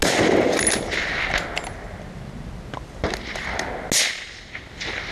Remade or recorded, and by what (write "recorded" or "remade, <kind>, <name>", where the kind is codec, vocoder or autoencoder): recorded